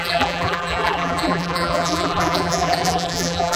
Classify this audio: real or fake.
fake